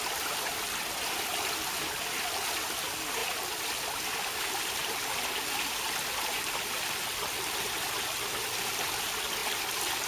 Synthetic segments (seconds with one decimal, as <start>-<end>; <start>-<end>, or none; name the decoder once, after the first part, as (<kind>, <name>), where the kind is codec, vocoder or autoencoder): none

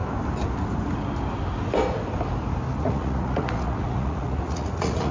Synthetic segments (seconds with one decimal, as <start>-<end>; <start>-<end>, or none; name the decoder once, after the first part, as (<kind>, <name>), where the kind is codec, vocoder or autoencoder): 2.8-5.1 (vocoder, Vocos)

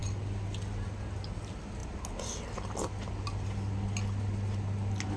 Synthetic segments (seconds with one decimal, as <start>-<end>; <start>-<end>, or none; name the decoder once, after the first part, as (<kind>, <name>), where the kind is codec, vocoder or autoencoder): none

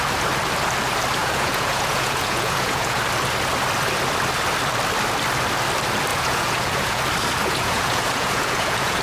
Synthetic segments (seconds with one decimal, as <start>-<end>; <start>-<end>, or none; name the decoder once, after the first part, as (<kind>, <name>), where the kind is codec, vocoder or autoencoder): 1.2-3.0 (vocoder, Vocos); 6.1-7.0; 7.4-9.0

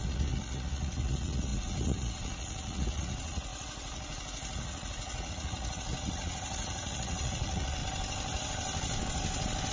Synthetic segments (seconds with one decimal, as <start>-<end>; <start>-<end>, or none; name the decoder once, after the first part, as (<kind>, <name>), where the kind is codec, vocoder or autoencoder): 0.0-7.8 (vocoder, Vocos)

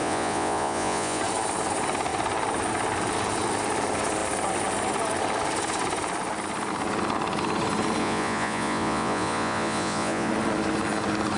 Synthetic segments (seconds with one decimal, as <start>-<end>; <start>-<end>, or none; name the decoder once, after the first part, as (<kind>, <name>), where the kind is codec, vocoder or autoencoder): 0.0-1.2 (vocoder, Vocos); 8.0-10.3

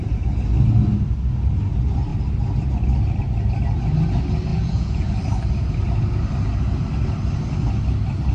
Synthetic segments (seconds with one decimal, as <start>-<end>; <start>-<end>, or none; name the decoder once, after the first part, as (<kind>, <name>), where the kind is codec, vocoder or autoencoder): 4.5-5.1 (vocoder, Vocos)